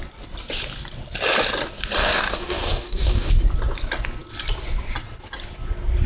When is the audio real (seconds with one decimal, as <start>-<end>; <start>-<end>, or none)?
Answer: 0.0-2.0; 3.3-6.1